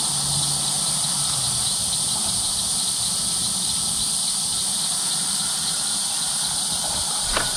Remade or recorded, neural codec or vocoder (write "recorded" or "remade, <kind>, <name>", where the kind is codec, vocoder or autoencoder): recorded